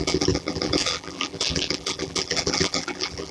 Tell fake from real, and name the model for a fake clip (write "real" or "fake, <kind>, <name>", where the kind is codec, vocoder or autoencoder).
fake, vocoder, BigVGAN v2